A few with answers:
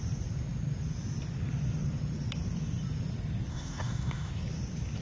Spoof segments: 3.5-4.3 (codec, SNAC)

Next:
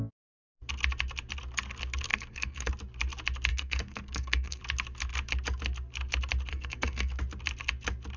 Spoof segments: 2.1-2.7 (codec, SNAC); 3.5-4.6; 6.5-7.2

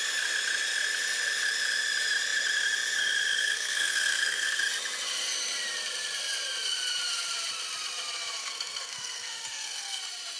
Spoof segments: 3.4-4.6 (codec, SNAC); 8.4-10.0

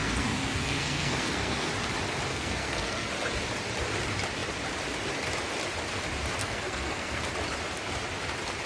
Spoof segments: 0.0-1.7 (codec, SNAC); 2.3-3.1; 6.4-7.3

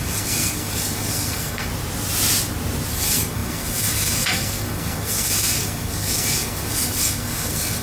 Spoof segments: 0.0-1.7 (codec, SNAC); 2.9-7.8

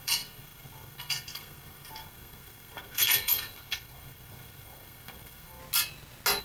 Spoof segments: 0.0-5.6 (codec, SNAC)

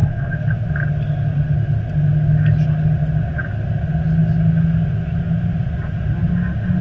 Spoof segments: none